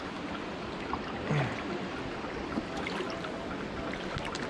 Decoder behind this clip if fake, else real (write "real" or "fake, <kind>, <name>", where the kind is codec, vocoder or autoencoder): real